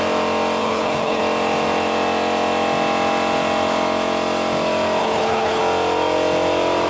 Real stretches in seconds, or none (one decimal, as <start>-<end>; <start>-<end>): 0.0-0.6; 1.2-5.0; 5.6-6.9